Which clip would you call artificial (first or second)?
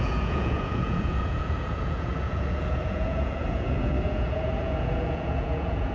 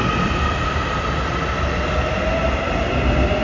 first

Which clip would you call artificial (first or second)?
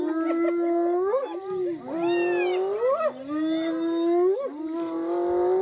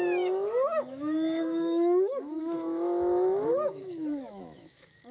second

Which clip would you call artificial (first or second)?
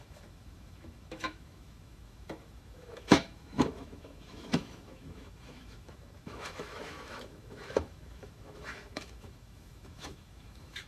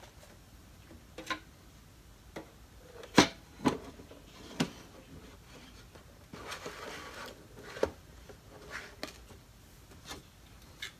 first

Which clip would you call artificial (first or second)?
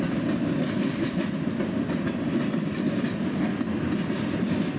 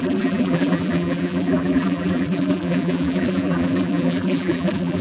second